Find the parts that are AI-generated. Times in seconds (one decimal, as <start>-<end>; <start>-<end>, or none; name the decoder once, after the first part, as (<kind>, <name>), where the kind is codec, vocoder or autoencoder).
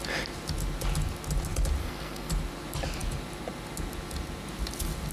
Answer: 1.8-2.3 (codec, SNAC)